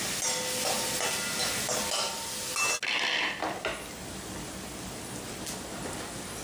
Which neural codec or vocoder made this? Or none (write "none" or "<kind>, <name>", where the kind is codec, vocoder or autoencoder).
none